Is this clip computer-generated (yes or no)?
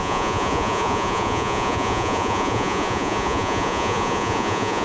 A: yes